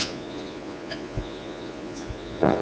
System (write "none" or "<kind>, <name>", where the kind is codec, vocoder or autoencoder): vocoder, Vocos